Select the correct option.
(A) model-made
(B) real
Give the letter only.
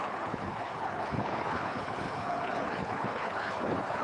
A